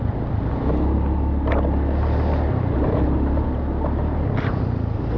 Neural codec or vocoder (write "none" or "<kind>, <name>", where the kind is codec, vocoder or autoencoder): none